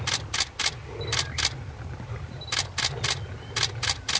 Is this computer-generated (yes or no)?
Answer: no